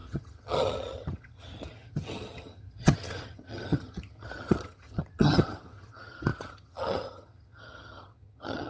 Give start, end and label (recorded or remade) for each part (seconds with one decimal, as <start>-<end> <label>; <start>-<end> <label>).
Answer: 0.0-8.7 remade